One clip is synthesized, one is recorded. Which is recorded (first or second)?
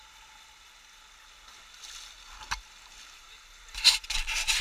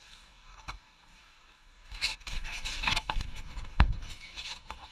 first